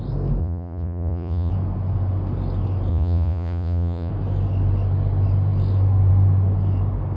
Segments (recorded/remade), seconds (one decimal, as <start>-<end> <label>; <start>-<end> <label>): 0.0-0.4 recorded; 0.4-1.5 remade; 1.5-2.9 recorded; 2.9-4.1 remade; 4.1-7.2 recorded